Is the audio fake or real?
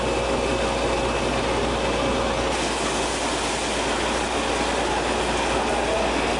real